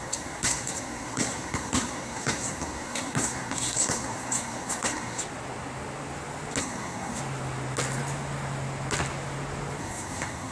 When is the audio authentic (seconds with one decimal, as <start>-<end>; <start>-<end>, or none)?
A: 5.2-6.6; 7.2-9.8